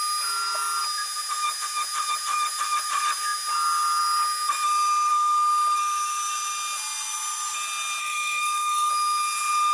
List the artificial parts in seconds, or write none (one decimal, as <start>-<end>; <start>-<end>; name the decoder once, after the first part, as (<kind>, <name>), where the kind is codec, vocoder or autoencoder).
8.0-8.9 (codec, SNAC)